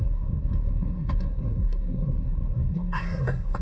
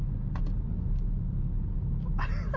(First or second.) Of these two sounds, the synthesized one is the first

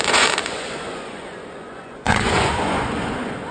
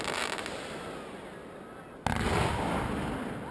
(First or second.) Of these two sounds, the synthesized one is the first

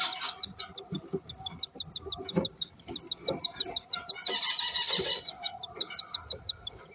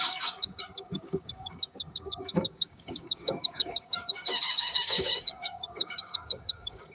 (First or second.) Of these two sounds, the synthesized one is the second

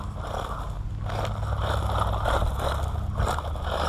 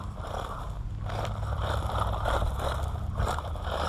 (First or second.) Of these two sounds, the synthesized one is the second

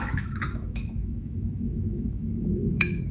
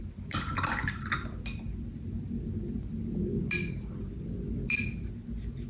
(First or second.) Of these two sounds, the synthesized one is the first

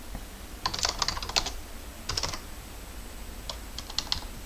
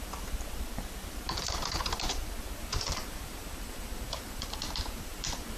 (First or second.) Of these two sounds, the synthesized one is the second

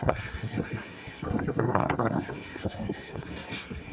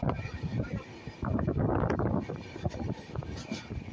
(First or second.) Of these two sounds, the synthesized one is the first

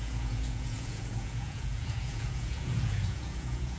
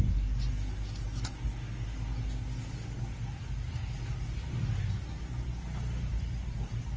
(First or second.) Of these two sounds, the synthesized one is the first